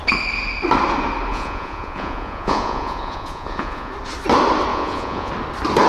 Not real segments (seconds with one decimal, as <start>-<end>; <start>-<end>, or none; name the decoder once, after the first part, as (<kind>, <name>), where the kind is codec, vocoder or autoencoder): 1.3-3.9 (vocoder, Vocos); 4.7-5.3

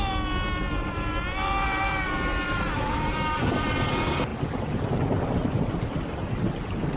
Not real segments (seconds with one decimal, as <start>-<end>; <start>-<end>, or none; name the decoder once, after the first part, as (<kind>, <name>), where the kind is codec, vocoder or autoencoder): none